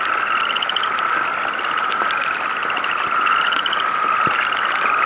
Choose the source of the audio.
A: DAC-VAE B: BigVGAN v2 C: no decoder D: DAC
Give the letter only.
C